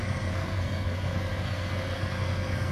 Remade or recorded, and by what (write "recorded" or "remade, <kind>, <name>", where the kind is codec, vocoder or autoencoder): remade, codec, SNAC